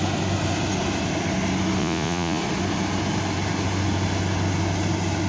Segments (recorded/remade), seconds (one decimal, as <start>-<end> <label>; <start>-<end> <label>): 0.0-1.8 recorded; 1.8-2.4 remade; 2.4-5.3 recorded